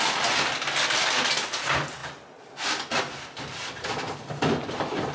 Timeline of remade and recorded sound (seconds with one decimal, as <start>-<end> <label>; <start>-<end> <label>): 0.0-5.1 recorded